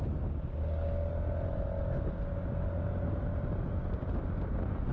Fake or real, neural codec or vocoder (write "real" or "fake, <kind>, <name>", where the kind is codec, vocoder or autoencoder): real